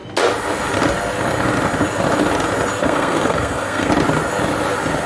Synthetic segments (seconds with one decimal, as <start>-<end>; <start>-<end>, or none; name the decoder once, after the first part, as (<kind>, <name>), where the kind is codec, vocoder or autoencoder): 2.8-3.9 (codec, SNAC)